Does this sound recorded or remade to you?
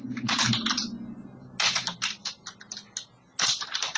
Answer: recorded